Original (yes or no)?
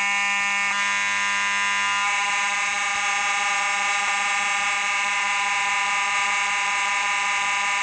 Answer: yes